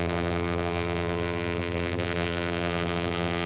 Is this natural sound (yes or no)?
no